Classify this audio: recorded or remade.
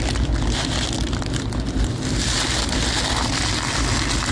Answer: recorded